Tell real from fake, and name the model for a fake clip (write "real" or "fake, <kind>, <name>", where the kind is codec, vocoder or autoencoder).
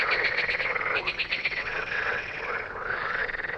fake, vocoder, WaveNeXt